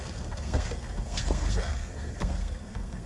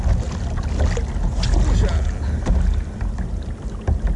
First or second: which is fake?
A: first